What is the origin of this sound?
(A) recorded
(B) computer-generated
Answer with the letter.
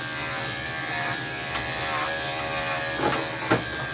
A